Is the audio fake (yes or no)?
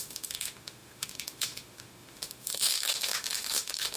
yes